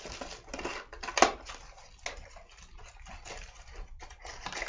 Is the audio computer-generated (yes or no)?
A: no